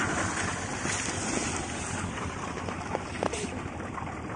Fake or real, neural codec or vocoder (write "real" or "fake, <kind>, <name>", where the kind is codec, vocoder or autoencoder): real